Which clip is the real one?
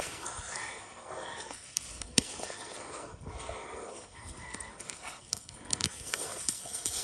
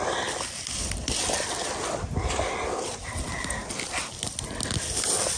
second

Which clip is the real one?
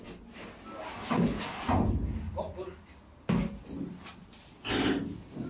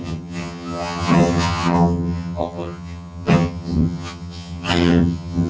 first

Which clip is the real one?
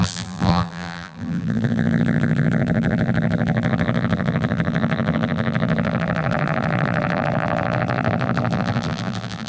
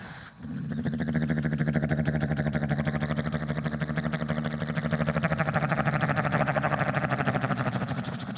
second